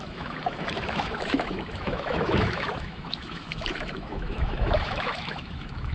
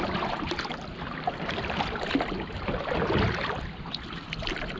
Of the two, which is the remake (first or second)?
first